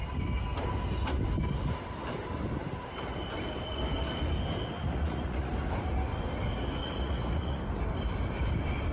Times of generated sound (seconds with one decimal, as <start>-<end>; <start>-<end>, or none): 4.8-5.5; 6.8-7.6